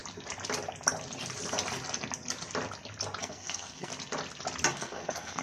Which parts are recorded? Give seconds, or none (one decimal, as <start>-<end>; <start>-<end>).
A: 0.0-3.2; 3.9-4.7